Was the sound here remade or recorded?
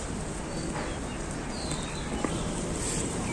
recorded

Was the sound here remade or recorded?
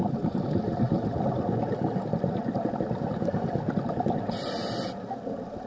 recorded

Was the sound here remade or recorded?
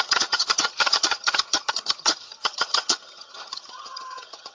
remade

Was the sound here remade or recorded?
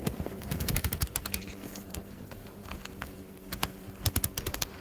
remade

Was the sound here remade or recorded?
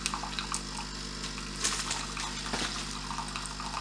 recorded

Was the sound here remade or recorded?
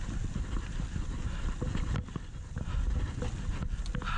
recorded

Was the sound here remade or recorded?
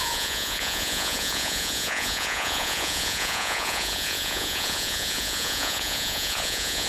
remade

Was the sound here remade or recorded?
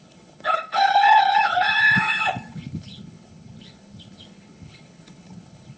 remade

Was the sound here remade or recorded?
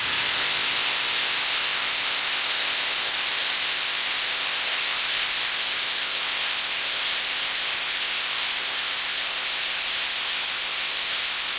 remade